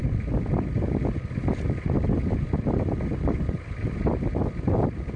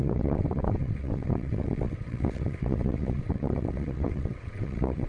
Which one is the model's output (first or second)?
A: second